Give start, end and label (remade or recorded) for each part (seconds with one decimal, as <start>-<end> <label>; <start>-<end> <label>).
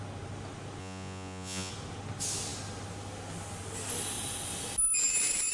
0.0-0.8 recorded; 0.8-1.7 remade; 1.7-5.5 recorded